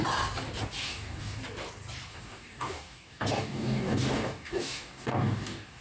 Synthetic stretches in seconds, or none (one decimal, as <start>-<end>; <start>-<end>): 0.8-1.4; 2.1-5.8